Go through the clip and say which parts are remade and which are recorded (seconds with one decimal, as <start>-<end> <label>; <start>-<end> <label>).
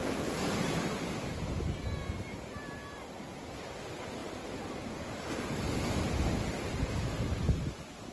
0.0-8.1 recorded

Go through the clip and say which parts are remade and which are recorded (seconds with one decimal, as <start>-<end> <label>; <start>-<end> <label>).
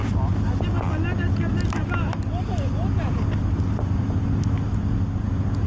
0.0-5.7 recorded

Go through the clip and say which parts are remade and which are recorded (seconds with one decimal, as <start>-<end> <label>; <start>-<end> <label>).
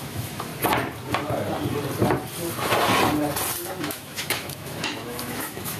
0.0-0.5 remade; 0.5-3.8 recorded; 3.8-5.8 remade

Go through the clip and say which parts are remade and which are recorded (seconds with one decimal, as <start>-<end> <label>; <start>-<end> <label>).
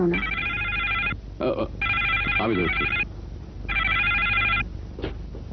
0.0-5.5 recorded